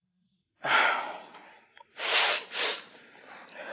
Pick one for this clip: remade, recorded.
recorded